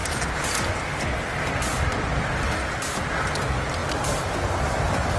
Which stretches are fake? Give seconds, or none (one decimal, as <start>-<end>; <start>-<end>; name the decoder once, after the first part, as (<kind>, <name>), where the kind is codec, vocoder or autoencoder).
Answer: none

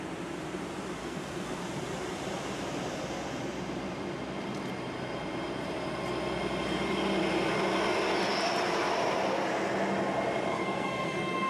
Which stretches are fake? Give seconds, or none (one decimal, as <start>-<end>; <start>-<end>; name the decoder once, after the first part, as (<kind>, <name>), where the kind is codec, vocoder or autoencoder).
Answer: 1.0-1.6 (codec, SNAC); 10.5-11.5

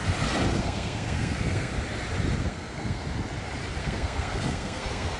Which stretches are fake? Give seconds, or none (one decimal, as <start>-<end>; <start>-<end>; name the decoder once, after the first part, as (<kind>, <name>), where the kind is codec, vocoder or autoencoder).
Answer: 0.6-1.7 (codec, SNAC); 2.4-3.0; 3.8-5.2